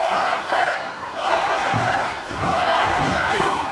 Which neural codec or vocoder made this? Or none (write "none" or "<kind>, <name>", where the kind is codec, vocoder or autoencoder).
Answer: codec, SNAC